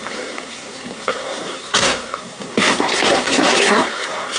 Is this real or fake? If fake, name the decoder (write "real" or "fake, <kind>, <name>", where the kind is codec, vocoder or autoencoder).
fake, codec, SNAC